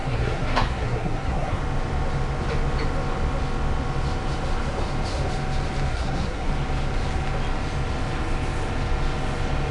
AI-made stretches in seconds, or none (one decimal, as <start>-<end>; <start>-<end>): 0.0-1.6; 5.9-6.5